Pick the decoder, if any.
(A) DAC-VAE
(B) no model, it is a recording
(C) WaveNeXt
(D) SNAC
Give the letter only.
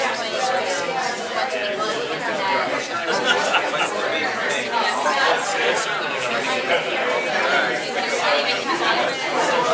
B